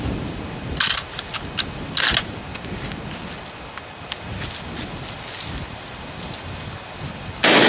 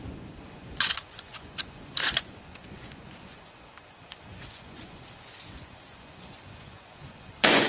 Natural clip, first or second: first